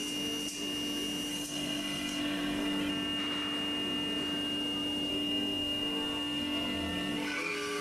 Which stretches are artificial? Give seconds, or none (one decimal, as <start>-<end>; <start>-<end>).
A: 1.3-2.9; 5.1-7.8